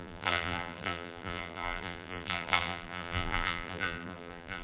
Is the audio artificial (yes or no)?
yes